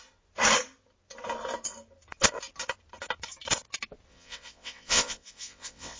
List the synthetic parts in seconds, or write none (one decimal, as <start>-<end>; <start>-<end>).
4.1-6.0